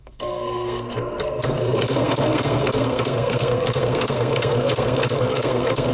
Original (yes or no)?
no